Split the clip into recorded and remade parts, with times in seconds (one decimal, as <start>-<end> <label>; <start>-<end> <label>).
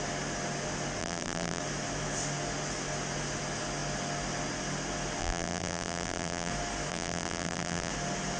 0.0-1.0 recorded; 1.0-1.6 remade; 1.6-5.2 recorded; 5.2-6.5 remade; 6.5-6.9 recorded; 6.9-7.9 remade; 7.9-8.4 recorded